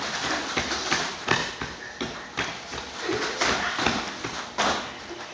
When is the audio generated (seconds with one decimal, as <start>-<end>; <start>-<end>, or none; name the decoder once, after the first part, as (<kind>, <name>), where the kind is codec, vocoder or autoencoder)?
0.0-5.3 (vocoder, BigVGAN v2)